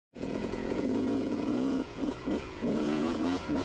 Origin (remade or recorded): remade